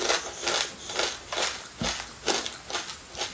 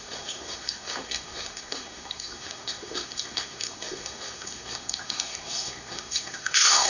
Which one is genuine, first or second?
first